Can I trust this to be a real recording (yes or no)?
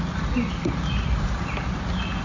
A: yes